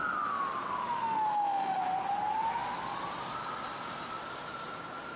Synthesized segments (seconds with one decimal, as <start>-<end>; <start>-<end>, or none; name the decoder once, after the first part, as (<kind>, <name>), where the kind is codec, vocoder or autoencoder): 0.8-1.8 (autoencoder, DAC-VAE)